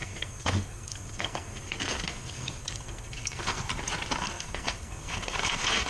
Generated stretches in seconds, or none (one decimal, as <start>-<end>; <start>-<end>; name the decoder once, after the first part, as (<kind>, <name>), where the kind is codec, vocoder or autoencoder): 0.0-3.7 (codec, SNAC); 4.2-5.9